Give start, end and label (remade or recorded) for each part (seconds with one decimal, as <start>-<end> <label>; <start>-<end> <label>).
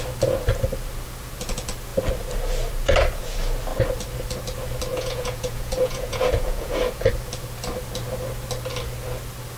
0.0-4.9 recorded; 4.9-7.1 remade; 7.1-9.6 recorded